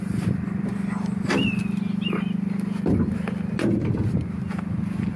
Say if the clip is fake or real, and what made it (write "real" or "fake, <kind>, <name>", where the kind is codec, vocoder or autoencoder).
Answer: real